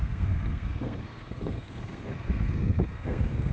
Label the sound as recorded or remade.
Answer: remade